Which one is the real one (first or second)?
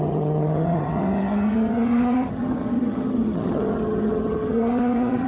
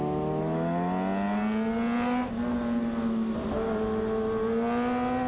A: second